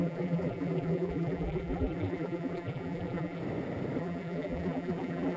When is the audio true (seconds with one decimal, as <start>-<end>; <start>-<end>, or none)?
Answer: 3.4-4.0